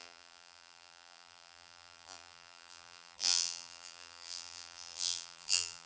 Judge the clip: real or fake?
fake